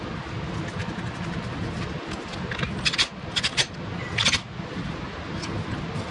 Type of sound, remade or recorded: recorded